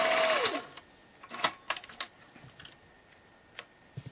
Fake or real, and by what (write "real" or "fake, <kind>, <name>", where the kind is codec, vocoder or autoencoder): real